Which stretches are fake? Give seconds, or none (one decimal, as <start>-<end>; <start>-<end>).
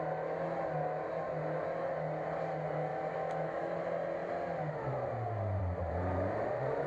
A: 2.9-3.8